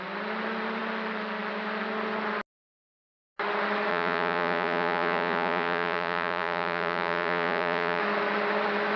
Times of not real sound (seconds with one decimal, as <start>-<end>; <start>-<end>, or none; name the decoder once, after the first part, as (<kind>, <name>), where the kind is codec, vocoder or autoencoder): 3.9-8.0 (vocoder, Vocos)